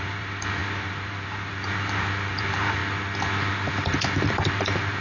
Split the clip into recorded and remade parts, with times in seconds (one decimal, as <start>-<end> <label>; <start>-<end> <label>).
0.0-2.8 remade; 2.8-3.9 recorded; 3.9-5.0 remade

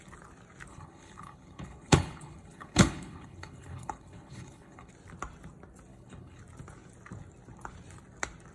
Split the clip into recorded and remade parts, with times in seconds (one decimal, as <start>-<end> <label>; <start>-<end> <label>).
0.0-0.7 recorded; 0.7-4.9 remade; 4.9-5.9 recorded; 5.9-6.4 remade; 6.4-8.5 recorded

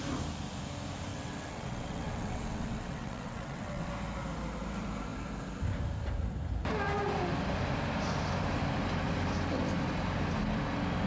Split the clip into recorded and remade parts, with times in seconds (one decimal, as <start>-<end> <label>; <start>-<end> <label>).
0.0-1.1 recorded; 1.1-3.9 remade; 3.9-11.1 recorded

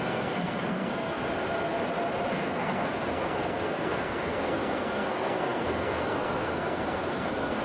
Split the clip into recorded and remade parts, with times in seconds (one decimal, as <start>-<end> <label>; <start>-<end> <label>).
0.0-1.2 remade; 1.2-2.3 recorded; 2.3-7.6 remade

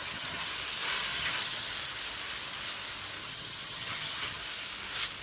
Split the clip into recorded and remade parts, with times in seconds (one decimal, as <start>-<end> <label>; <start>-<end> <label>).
0.0-0.5 remade; 0.5-1.1 recorded; 1.1-1.7 remade; 1.7-3.2 recorded; 3.2-4.4 remade; 4.4-5.2 recorded

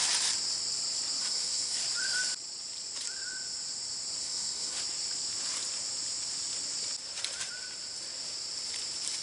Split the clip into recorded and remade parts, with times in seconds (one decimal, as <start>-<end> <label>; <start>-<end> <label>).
0.0-1.2 recorded; 1.2-1.8 remade; 1.8-4.2 recorded; 4.2-4.8 remade; 4.8-9.2 recorded